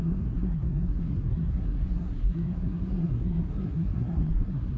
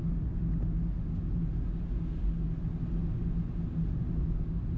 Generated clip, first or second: first